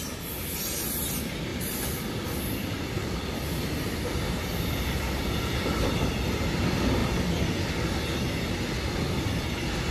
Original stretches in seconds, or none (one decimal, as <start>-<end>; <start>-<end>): 0.0-1.5; 5.9-9.9

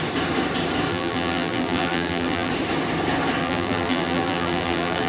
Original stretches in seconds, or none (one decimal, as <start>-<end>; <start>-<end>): 0.0-0.9; 2.5-3.4

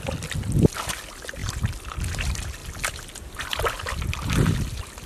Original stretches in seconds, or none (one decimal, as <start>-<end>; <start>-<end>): 1.4-2.0; 2.6-3.4

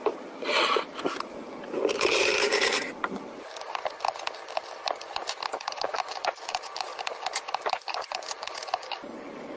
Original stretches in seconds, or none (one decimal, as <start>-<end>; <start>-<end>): 3.8-5.7; 6.9-7.7

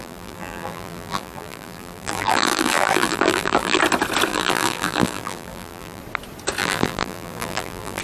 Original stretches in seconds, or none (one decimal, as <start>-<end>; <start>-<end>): 3.8-4.3; 6.0-6.6

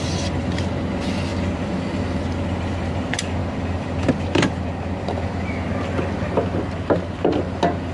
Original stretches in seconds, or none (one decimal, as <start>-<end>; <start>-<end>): 0.0-7.9

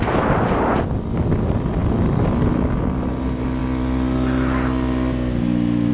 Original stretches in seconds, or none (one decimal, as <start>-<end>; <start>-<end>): 0.0-5.9

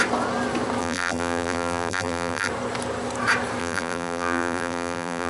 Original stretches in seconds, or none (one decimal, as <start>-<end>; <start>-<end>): 0.0-0.8; 2.5-3.6